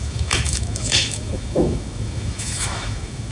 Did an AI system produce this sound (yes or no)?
yes